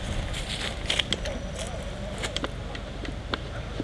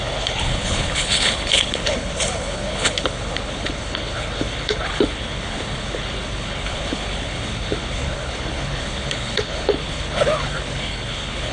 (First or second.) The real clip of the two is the first